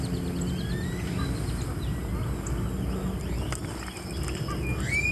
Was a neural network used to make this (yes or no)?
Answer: no